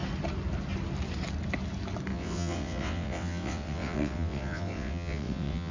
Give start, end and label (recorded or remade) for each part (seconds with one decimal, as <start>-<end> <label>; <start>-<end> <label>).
0.0-2.1 recorded; 2.1-5.7 remade